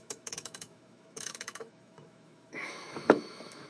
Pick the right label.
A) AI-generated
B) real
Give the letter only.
A